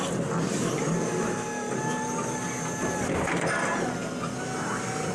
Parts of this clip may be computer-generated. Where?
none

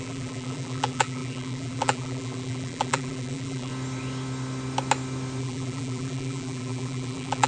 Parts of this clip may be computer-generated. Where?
0.0-3.7 (vocoder, BigVGAN v2); 5.4-7.5

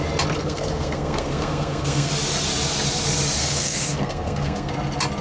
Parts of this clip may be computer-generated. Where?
0.4-2.1 (codec, SNAC); 3.4-4.7

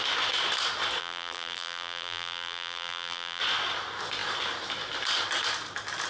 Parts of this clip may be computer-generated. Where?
1.0-3.4 (vocoder, BigVGAN v2)

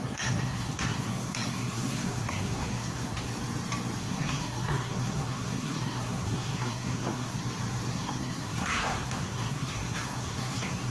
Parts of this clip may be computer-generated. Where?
0.0-3.3 (codec, SNAC); 4.0-7.4; 7.9-10.9